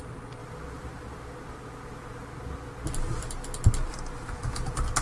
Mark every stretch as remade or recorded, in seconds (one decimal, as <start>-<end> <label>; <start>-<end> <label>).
0.0-5.0 recorded